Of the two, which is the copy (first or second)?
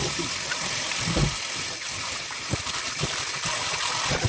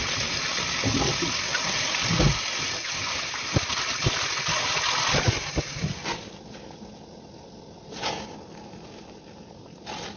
first